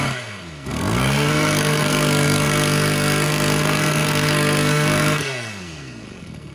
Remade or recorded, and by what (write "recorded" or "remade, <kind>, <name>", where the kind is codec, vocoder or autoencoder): remade, codec, SNAC